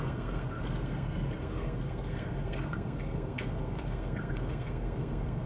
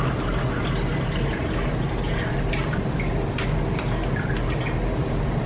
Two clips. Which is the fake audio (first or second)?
first